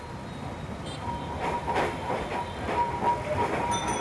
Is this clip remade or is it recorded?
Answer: recorded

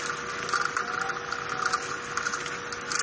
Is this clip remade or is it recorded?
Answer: recorded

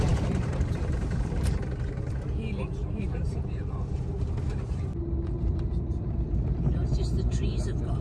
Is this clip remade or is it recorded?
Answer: remade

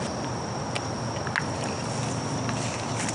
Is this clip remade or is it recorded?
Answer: recorded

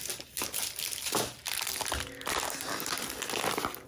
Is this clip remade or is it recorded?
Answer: recorded